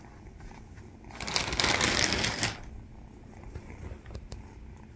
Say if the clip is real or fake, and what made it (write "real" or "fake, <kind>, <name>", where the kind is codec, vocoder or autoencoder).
real